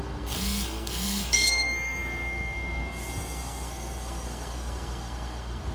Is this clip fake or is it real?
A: fake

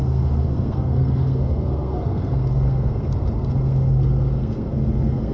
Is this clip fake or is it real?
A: fake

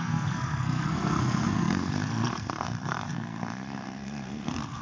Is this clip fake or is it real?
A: fake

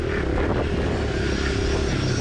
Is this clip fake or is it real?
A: real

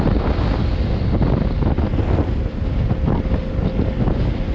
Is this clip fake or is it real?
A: real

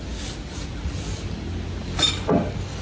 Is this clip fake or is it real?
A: real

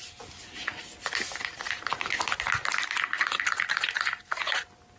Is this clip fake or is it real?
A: real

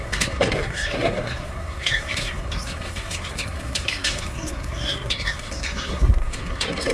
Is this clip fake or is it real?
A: fake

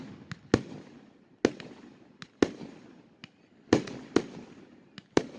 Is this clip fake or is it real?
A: real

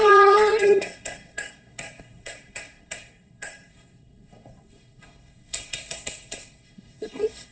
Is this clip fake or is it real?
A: fake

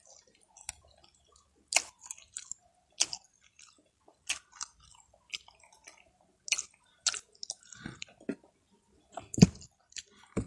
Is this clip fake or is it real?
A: real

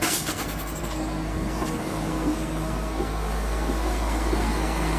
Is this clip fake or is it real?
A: fake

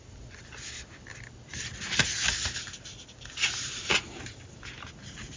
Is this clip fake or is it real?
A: real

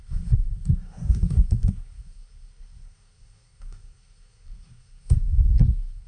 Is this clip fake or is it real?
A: fake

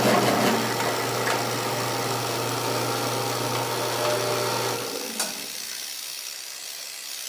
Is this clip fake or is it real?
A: real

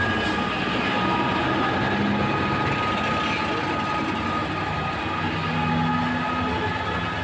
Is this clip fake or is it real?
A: real